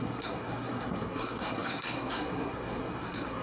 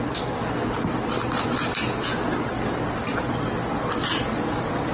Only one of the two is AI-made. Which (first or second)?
first